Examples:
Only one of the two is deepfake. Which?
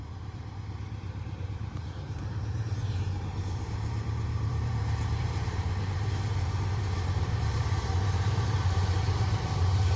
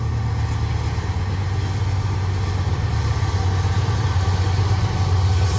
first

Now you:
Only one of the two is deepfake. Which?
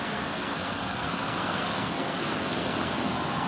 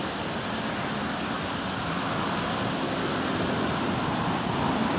first